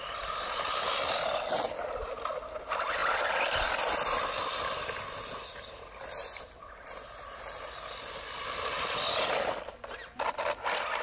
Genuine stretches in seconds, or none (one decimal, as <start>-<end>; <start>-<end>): 0.0-11.0